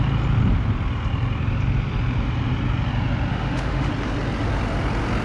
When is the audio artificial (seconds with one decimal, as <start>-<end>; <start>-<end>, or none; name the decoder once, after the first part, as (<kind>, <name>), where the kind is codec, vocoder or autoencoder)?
3.3-3.9 (autoencoder, DAC-VAE)